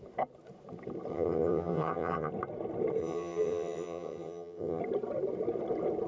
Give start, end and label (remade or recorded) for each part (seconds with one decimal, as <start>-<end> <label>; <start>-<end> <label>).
0.0-1.1 recorded; 1.1-2.3 remade; 2.3-3.0 recorded; 3.0-4.8 remade; 4.8-6.1 recorded